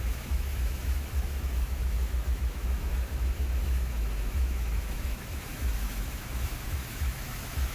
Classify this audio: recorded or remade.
remade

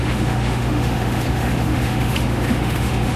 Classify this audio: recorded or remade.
remade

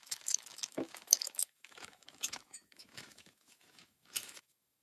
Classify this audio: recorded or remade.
remade